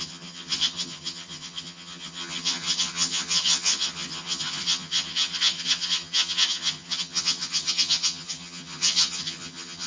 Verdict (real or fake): fake